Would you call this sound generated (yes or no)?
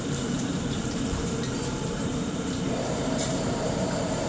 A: yes